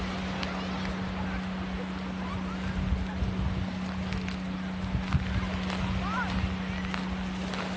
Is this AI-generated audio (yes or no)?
no